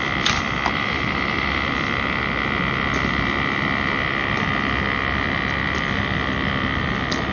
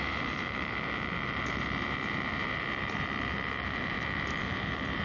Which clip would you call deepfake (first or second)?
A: second